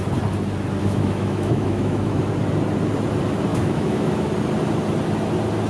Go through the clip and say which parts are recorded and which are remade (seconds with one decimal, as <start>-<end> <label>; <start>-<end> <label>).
0.0-0.8 recorded; 0.8-2.2 remade; 2.2-3.5 recorded; 3.5-4.3 remade; 4.3-5.7 recorded